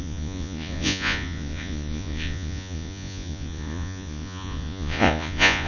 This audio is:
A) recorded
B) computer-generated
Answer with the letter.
B